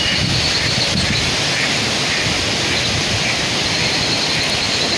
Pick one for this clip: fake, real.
real